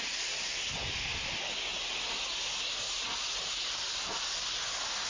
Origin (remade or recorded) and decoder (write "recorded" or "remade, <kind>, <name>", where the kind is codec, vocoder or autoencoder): recorded